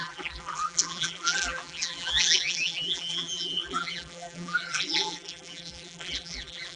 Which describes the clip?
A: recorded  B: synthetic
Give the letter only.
B